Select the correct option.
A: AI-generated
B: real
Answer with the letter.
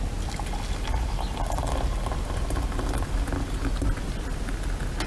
B